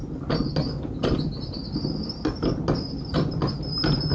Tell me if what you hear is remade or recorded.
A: recorded